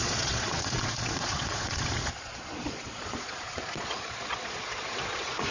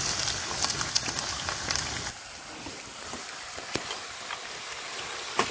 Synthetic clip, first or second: first